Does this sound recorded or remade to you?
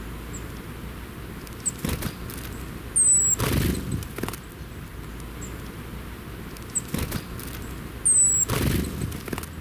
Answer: recorded